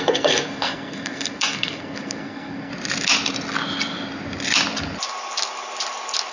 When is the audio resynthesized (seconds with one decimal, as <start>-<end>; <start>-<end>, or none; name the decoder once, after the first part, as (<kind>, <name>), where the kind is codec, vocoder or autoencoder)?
0.0-2.7 (codec, SNAC)